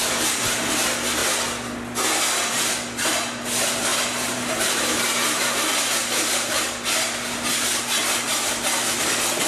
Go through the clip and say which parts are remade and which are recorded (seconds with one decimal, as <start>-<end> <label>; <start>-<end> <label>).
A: 0.0-3.9 recorded; 3.9-6.6 remade; 6.6-9.5 recorded